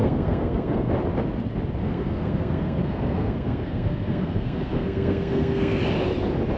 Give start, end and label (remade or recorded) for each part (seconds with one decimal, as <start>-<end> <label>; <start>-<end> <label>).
0.0-0.9 remade; 0.9-1.8 recorded; 1.8-5.8 remade; 5.8-6.6 recorded